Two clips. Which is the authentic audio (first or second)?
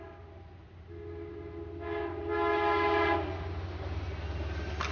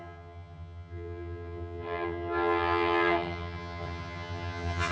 first